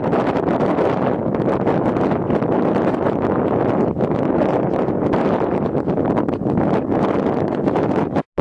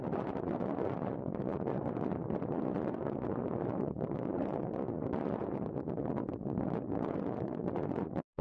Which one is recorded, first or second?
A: first